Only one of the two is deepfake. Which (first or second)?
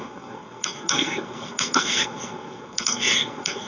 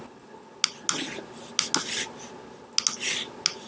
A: first